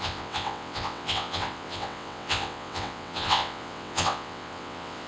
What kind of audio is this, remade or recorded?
remade